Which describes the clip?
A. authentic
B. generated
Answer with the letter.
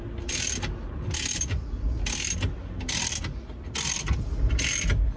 A